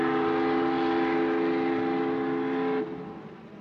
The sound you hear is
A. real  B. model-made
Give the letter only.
A